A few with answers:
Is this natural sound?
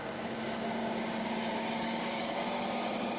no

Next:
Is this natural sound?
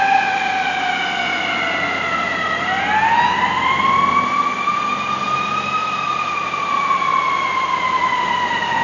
yes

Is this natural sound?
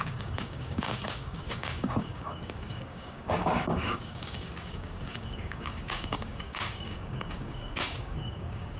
no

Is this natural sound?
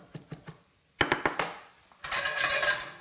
yes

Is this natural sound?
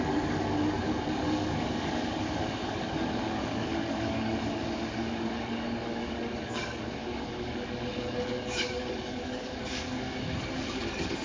no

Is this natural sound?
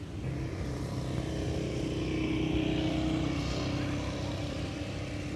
yes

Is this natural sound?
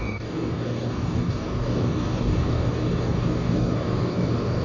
no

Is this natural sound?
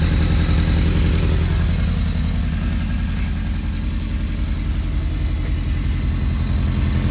yes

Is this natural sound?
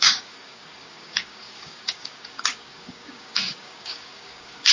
no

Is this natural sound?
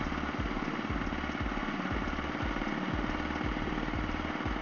yes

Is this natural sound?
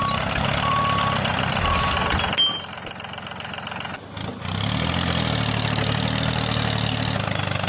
yes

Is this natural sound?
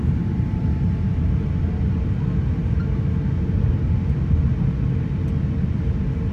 yes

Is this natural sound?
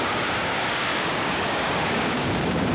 no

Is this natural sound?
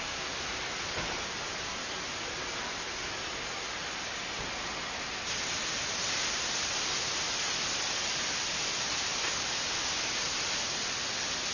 yes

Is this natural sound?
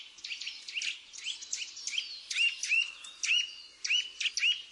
yes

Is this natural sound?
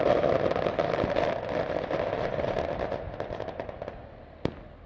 yes